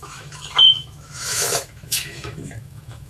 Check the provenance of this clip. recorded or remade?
remade